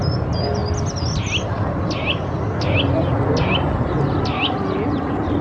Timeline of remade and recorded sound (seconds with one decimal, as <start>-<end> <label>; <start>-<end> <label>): 0.0-5.4 recorded